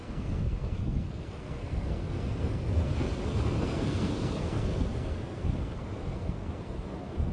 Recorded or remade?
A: remade